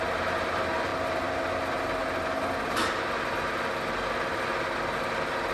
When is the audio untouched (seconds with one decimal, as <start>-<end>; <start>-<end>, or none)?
0.0-5.5